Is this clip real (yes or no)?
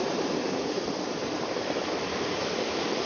yes